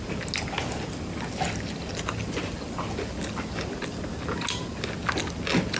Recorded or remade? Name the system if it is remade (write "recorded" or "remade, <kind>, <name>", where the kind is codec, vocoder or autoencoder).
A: recorded